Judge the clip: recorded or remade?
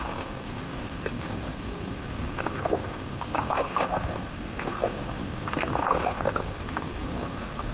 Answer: remade